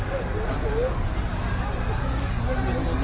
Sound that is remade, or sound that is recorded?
recorded